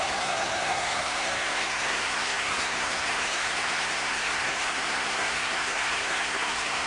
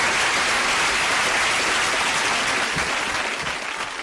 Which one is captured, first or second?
second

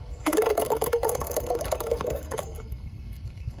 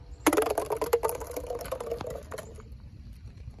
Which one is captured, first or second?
second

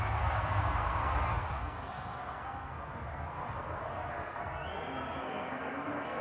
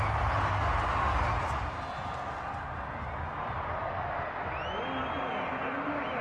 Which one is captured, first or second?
second